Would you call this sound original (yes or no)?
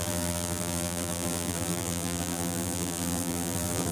no